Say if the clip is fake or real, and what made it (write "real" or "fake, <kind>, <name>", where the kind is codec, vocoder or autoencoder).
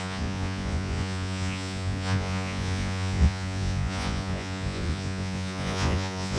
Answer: fake, vocoder, Vocos